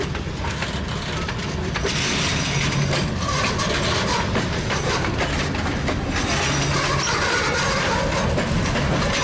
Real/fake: real